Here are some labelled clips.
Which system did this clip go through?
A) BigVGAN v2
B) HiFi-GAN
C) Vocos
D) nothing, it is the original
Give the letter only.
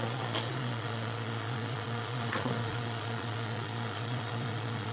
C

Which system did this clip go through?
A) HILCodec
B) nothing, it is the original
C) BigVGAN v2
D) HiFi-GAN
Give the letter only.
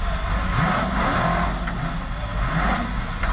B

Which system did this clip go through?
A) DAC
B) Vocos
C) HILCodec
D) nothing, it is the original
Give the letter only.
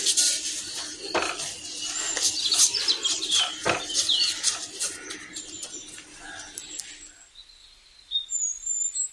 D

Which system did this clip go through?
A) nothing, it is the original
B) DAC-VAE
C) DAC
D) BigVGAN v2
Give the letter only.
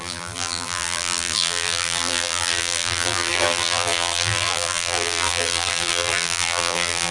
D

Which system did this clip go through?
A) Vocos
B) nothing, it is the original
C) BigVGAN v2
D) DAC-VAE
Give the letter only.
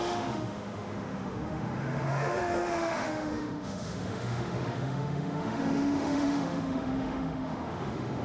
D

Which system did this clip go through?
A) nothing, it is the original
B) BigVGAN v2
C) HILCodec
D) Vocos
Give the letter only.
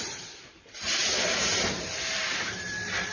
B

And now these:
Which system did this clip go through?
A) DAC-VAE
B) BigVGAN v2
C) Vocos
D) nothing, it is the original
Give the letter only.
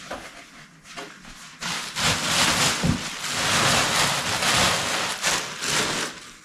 D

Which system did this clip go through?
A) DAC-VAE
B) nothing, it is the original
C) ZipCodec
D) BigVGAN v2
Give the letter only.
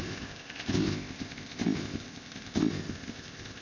C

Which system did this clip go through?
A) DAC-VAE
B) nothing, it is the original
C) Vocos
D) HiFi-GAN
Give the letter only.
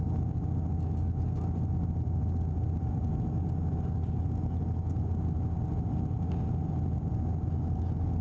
B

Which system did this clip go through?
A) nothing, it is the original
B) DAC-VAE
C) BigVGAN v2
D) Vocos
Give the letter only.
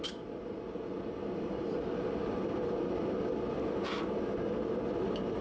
C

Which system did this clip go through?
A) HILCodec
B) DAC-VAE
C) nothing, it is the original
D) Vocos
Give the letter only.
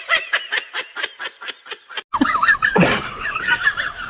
C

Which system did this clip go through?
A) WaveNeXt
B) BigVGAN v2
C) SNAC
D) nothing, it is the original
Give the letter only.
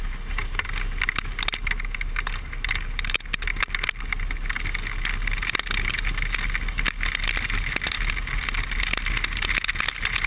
D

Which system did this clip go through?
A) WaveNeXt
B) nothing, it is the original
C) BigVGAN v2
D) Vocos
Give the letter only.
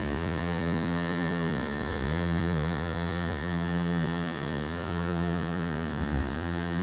D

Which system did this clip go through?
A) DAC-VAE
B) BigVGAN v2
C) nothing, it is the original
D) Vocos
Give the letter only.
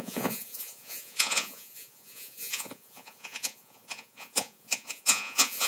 D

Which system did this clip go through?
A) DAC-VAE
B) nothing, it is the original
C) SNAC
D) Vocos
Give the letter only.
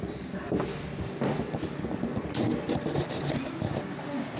B